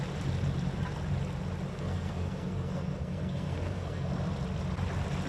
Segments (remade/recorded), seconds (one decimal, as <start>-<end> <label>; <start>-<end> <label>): 0.0-1.7 recorded; 1.7-4.1 remade; 4.1-5.3 recorded